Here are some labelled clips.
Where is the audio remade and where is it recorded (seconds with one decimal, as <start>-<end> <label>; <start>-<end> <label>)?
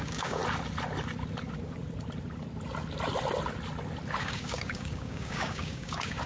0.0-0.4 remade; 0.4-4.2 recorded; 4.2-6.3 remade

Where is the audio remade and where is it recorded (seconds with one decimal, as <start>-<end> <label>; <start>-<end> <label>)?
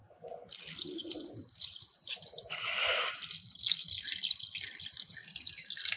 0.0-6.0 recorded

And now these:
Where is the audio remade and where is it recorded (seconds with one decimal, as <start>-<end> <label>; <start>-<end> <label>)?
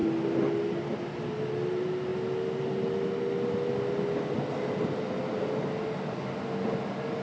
0.0-7.2 recorded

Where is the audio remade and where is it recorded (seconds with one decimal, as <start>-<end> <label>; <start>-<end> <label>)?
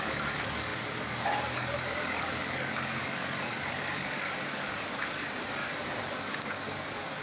0.0-5.6 remade; 5.6-6.3 recorded; 6.3-7.2 remade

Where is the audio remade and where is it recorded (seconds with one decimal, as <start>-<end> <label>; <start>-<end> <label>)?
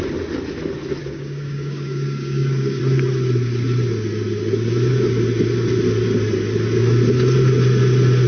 0.0-1.0 recorded; 1.0-2.8 remade; 2.8-8.3 recorded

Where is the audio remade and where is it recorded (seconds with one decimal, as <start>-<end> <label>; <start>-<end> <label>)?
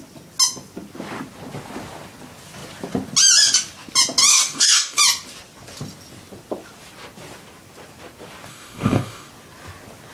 0.0-4.3 recorded; 4.3-5.0 remade; 5.0-8.5 recorded; 8.5-9.3 remade; 9.3-10.1 recorded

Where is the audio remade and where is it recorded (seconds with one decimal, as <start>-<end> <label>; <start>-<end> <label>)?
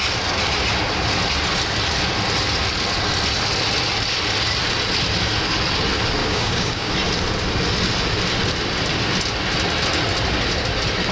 0.0-6.2 recorded; 6.2-6.9 remade; 6.9-11.1 recorded